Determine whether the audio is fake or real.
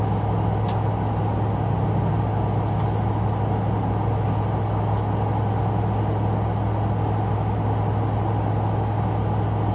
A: real